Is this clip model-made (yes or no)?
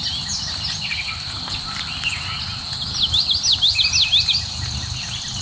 no